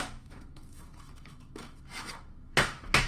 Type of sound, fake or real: fake